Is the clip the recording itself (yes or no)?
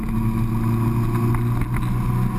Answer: yes